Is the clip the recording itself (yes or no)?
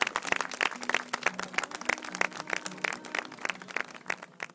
yes